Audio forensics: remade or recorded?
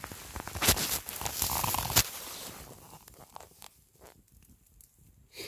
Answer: recorded